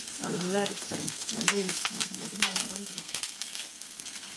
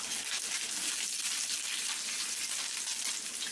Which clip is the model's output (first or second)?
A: first